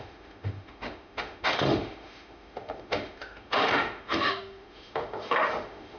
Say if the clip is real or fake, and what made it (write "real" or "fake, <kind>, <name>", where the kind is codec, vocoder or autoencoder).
fake, autoencoder, DAC-VAE